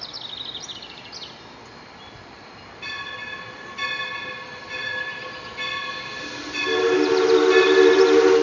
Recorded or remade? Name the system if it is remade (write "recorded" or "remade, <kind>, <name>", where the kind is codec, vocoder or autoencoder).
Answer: recorded